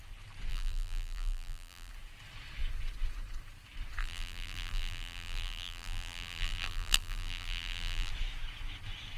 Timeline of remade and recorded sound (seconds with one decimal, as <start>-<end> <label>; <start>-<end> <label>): 0.0-0.5 recorded; 0.5-1.9 remade; 1.9-4.0 recorded; 4.0-8.1 remade; 8.1-9.2 recorded